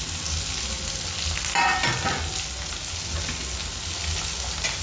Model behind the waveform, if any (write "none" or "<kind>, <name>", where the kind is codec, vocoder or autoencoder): none